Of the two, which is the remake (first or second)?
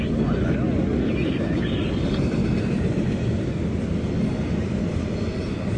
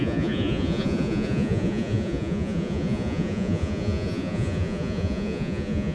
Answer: second